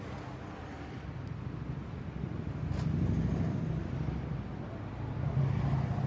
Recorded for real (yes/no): yes